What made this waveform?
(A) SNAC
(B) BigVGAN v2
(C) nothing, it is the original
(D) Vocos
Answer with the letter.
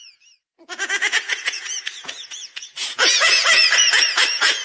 D